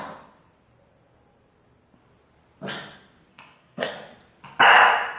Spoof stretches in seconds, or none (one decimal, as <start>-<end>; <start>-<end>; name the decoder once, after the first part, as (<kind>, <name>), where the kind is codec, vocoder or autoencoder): 3.3-4.1 (codec, SNAC)